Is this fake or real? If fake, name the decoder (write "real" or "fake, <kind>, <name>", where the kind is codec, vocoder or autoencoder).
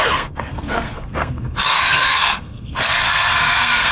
fake, codec, SNAC